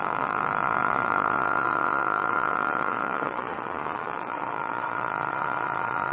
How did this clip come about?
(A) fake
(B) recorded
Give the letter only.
A